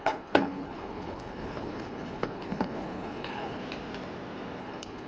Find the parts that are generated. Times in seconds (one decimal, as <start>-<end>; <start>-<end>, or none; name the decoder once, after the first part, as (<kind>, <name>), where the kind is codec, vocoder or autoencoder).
0.0-3.6 (codec, HILCodec); 4.6-5.1